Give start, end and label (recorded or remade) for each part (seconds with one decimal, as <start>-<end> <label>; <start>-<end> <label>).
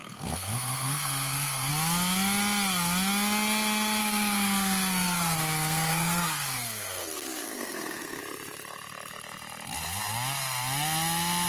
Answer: 0.0-1.7 remade; 1.7-4.0 recorded; 4.0-8.2 remade; 8.2-11.5 recorded